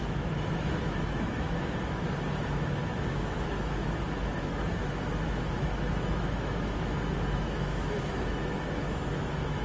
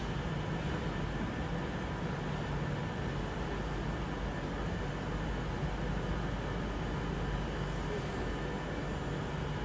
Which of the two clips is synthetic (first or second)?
first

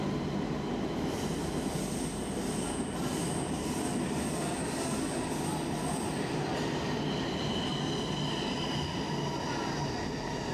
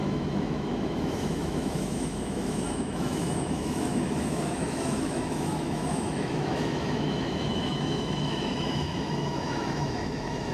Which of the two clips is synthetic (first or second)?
second